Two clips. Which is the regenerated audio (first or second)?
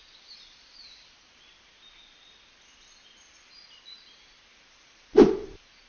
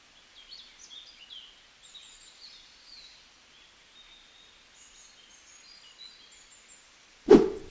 first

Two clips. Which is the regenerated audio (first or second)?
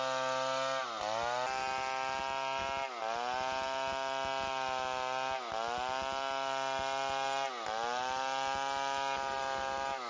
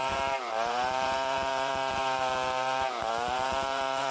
second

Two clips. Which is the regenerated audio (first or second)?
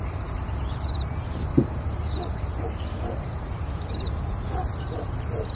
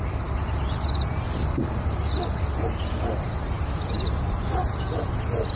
first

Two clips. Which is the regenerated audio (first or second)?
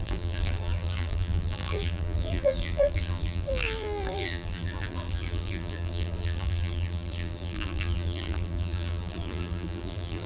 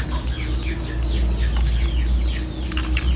first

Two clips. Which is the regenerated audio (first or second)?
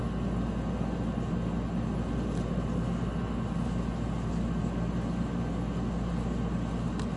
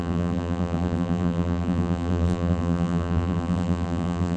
second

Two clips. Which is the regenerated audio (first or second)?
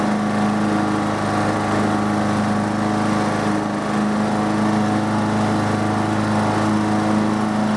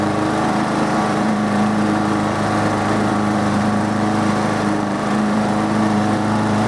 second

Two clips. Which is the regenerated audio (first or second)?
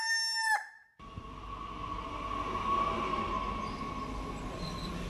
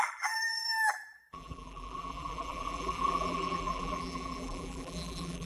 second